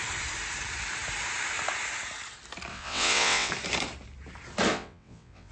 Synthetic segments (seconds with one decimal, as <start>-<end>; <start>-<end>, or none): 2.7-3.5; 4.7-5.5